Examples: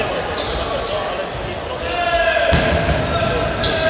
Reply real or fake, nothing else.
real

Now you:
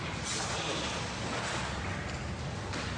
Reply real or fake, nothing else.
real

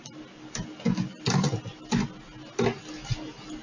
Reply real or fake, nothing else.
real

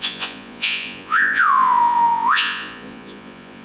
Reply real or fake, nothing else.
fake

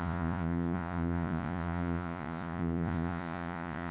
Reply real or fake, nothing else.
fake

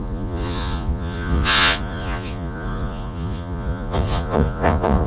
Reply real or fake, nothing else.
fake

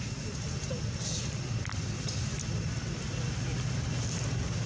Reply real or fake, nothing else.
real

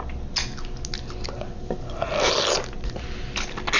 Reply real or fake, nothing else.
real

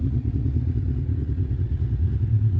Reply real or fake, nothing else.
fake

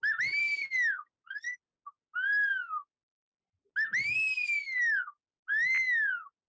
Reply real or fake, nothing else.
real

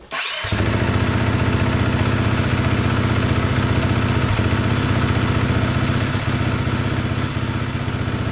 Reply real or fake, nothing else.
real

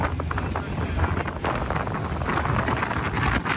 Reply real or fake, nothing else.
real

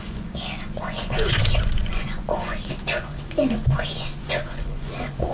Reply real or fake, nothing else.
fake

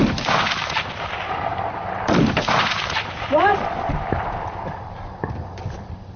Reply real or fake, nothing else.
real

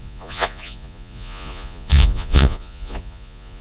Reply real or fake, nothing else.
fake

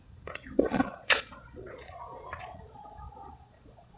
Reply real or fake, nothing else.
fake